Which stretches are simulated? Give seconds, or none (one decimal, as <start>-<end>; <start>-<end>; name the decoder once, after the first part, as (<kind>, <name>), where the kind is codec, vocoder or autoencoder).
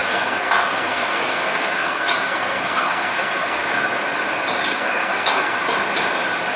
0.0-4.0 (codec, SNAC); 4.7-5.6